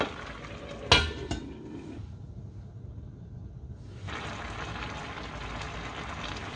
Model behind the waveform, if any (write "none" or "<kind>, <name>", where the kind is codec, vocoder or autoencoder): none